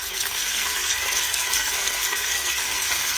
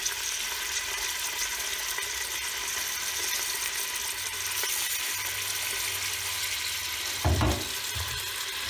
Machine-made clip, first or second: first